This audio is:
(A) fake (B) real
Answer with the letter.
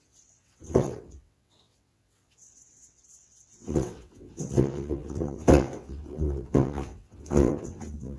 A